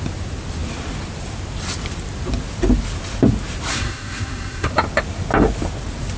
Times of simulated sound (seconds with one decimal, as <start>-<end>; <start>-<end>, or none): 3.7-4.7